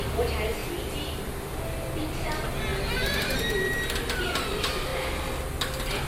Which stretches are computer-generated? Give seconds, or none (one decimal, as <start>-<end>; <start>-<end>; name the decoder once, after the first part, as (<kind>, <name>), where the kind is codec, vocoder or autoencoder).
none

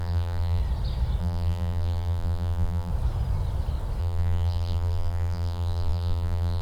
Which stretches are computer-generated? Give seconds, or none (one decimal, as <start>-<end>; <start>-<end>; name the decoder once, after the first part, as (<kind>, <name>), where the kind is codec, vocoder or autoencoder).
0.0-0.6 (vocoder, BigVGAN v2); 1.2-2.9; 4.0-6.6

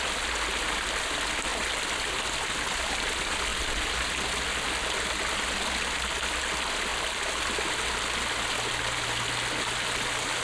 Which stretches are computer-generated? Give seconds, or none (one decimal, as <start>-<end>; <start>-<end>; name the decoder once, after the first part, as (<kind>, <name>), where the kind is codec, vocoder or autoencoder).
1.5-2.1 (vocoder, BigVGAN v2); 6.9-7.5

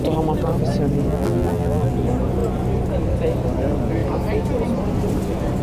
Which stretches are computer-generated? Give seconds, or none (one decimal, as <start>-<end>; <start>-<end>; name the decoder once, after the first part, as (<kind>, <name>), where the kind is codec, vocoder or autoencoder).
1.1-1.9 (vocoder, BigVGAN v2)

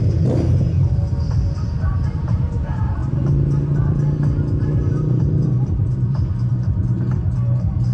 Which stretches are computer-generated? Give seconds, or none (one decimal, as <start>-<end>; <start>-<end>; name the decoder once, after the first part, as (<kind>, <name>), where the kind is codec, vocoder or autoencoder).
0.0-0.8 (vocoder, BigVGAN v2); 1.3-3.0; 5.2-7.9

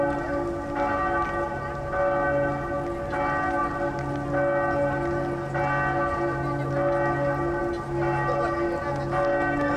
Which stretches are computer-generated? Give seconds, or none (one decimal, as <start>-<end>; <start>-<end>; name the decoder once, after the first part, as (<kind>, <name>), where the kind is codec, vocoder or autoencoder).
none

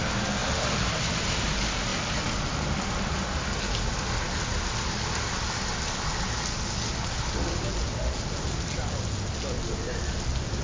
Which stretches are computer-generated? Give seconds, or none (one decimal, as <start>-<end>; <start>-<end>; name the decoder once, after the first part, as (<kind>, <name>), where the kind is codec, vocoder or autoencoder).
0.4-1.3 (vocoder, BigVGAN v2); 1.9-2.8